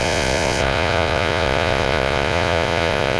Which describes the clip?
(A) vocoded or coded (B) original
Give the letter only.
A